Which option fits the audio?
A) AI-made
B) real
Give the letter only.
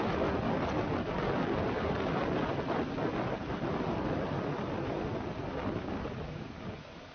B